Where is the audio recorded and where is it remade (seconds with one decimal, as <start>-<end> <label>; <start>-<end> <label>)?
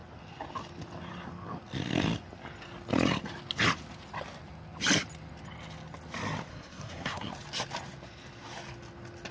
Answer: 0.0-6.5 recorded; 6.5-7.3 remade; 7.3-9.3 recorded